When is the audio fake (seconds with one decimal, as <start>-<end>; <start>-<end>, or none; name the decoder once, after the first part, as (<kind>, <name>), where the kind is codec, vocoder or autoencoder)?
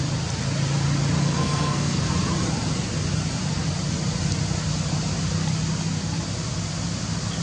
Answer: 1.2-2.0 (codec, SNAC)